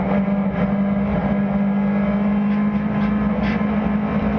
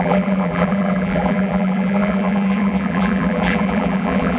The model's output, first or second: second